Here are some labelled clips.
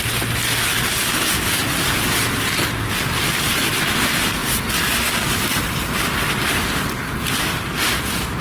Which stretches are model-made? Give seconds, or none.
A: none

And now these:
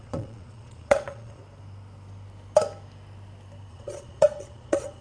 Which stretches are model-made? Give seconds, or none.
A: 0.0-1.4 (vocoder, Vocos); 3.7-5.0

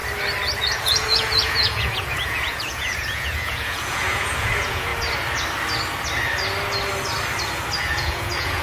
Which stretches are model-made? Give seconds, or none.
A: 0.6-4.9 (vocoder, Vocos); 7.8-8.6

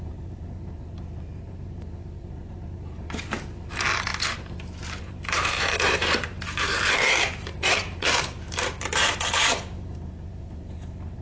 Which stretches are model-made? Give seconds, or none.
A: 0.0-4.1 (vocoder, BigVGAN v2); 5.0-11.2